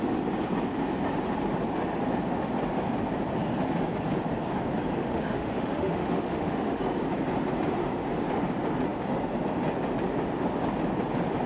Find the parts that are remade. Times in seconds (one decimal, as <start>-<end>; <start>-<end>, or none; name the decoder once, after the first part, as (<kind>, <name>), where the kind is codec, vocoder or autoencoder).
5.0-6.8 (autoencoder, DAC-VAE)